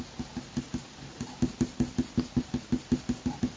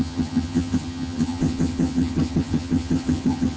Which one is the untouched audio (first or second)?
first